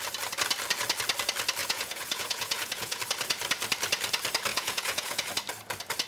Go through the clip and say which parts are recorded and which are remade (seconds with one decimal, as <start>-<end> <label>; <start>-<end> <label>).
0.0-1.6 recorded; 1.6-3.0 remade; 3.0-4.5 recorded; 4.5-5.3 remade; 5.3-6.1 recorded

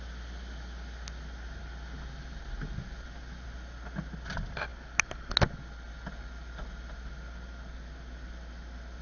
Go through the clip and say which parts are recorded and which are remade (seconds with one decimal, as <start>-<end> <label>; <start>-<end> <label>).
0.0-9.0 recorded

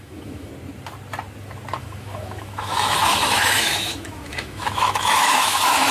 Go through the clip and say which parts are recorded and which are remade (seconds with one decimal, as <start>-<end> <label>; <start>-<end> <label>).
0.0-0.5 remade; 0.5-1.8 recorded; 1.8-5.9 remade

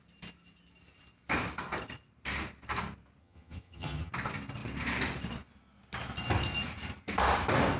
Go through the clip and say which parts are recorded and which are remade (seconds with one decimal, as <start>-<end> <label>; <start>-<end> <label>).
0.0-3.2 recorded; 3.2-4.1 remade; 4.1-7.8 recorded

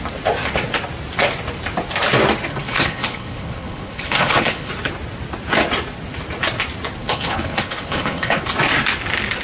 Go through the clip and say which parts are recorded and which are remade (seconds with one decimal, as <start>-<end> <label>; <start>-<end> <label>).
0.0-2.5 recorded; 2.5-4.7 remade; 4.7-7.0 recorded; 7.0-8.4 remade; 8.4-9.4 recorded

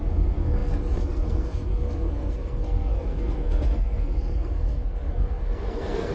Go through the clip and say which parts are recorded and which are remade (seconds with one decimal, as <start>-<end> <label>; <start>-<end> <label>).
0.0-6.1 remade

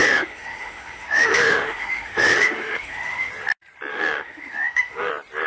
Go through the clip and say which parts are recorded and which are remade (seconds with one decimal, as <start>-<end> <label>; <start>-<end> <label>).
0.0-3.3 remade; 3.3-3.9 recorded; 3.9-5.1 remade; 5.1-5.5 recorded

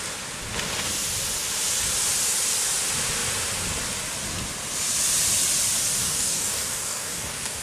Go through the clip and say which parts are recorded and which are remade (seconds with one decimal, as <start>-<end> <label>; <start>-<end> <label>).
0.0-6.0 recorded; 6.0-7.6 remade